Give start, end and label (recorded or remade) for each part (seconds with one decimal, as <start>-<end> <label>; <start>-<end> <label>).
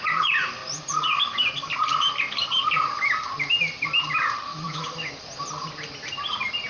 0.0-4.5 recorded; 4.5-5.2 remade; 5.2-6.7 recorded